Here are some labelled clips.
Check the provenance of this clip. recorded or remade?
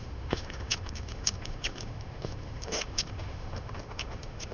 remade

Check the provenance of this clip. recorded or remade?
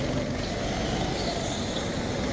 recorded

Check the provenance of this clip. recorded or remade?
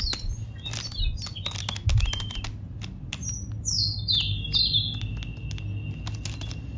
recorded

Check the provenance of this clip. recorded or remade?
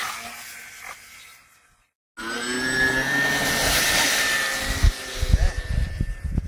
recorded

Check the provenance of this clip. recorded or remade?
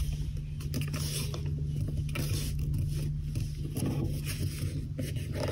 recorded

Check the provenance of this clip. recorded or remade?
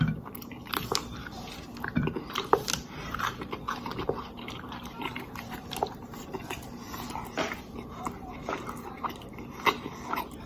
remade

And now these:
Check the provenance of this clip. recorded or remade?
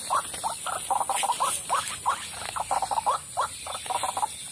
recorded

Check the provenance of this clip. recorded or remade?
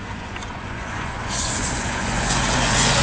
remade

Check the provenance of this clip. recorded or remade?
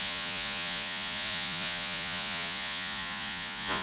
remade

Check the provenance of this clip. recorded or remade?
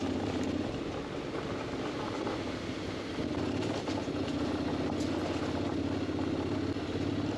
recorded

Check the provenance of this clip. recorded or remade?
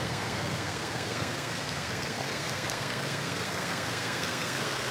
remade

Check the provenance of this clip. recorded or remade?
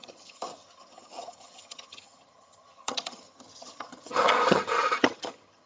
remade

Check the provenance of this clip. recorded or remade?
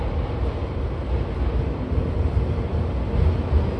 recorded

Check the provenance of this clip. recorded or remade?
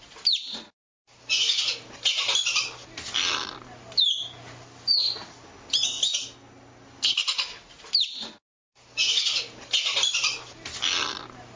recorded